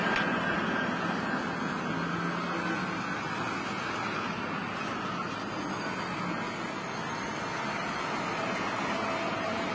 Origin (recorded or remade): recorded